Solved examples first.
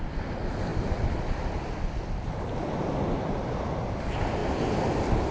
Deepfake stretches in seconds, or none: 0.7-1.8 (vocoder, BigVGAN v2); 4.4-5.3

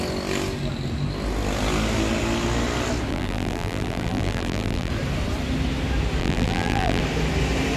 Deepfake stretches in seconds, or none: 3.1-4.9 (vocoder, BigVGAN v2); 6.2-7.0

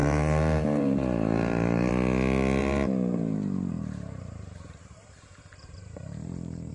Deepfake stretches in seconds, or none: 0.0-1.9 (vocoder, BigVGAN v2); 2.6-6.7